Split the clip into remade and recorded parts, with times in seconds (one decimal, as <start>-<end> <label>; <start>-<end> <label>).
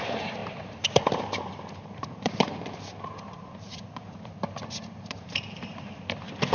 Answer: 0.0-6.5 remade